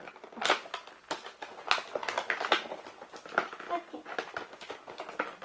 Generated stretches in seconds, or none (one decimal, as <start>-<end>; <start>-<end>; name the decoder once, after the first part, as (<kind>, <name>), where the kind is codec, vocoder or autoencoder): none